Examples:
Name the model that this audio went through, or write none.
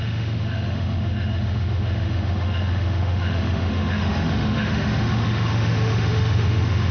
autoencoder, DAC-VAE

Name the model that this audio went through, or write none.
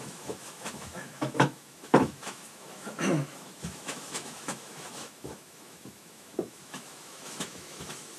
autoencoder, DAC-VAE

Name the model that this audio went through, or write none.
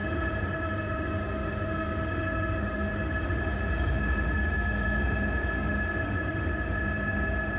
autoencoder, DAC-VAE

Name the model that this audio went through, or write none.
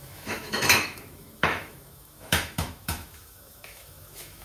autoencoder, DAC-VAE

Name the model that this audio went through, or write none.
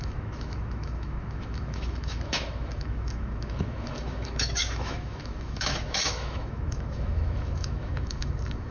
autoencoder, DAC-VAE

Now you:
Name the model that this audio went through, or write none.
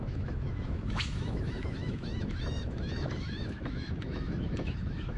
autoencoder, DAC-VAE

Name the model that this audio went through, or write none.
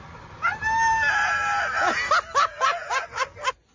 none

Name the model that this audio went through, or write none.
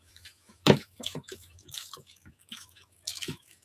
autoencoder, DAC-VAE